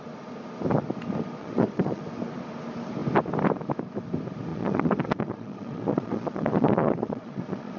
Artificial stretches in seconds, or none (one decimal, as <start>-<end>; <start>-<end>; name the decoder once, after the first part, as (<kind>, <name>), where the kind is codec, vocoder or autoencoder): 1.4-2.0 (vocoder, Vocos); 4.5-7.8